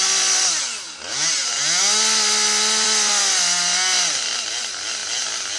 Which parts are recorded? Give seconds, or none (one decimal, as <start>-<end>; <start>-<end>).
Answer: 0.0-5.6